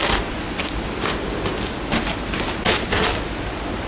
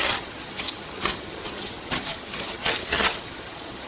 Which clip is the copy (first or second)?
second